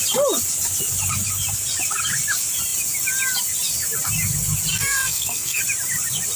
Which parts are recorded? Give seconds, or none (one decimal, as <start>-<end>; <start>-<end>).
0.0-4.7; 5.6-6.4